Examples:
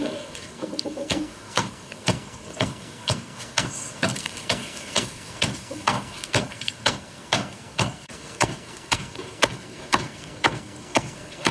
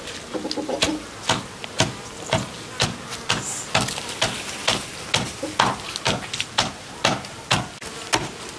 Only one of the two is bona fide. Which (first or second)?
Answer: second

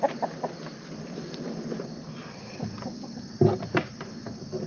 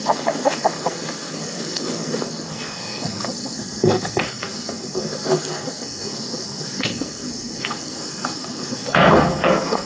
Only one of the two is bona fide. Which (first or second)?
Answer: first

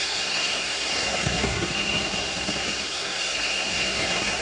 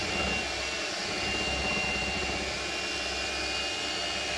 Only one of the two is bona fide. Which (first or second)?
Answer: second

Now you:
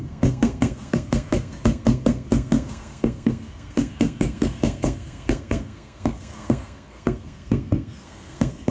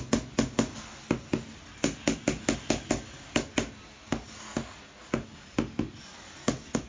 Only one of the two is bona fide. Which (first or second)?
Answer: second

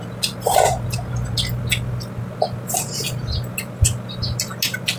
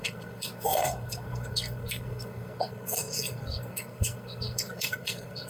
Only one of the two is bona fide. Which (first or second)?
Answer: first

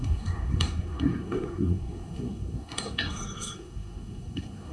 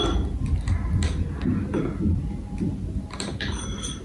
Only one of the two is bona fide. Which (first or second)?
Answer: second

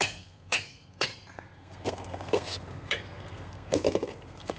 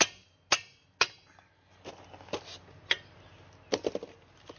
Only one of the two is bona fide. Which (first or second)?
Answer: second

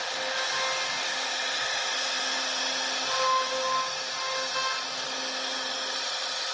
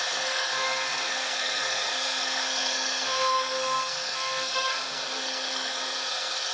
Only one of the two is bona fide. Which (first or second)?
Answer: first